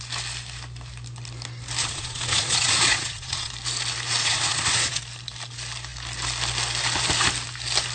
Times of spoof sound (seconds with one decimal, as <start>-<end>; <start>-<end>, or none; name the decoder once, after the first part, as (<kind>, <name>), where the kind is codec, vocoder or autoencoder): 1.8-3.5 (vocoder, Vocos); 4.2-5.0